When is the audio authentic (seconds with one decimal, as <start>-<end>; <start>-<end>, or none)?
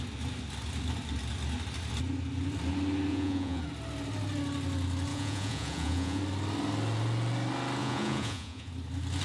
0.0-3.1; 3.6-5.1; 6.2-7.8; 8.7-9.2